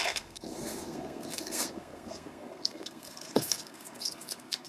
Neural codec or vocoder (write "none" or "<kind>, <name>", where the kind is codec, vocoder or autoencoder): codec, SNAC